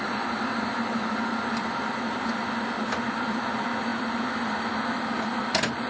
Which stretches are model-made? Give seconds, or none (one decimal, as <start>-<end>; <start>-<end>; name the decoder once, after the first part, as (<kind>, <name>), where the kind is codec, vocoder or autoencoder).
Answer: none